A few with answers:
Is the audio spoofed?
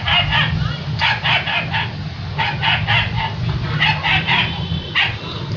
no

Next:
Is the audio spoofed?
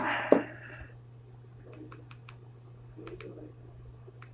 no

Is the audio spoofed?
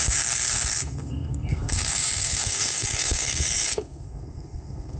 yes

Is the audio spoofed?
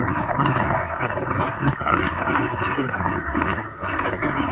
yes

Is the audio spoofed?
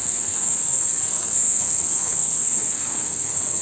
yes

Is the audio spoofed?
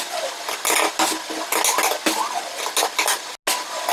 no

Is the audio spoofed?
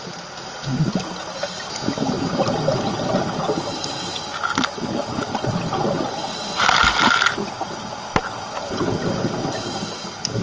no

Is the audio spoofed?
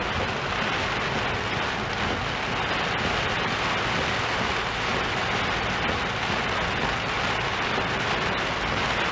no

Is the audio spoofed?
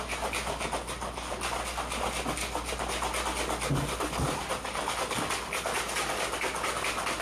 no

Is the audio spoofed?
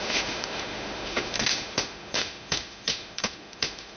yes